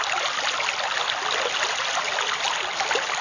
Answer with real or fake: real